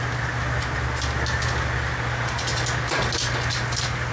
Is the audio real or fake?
real